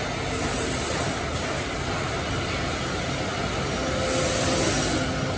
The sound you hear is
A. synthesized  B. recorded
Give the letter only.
B